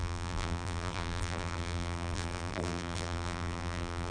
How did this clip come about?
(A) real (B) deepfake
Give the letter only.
B